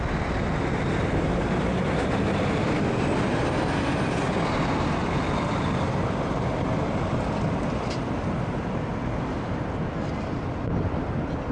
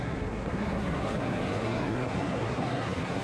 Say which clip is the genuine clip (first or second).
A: first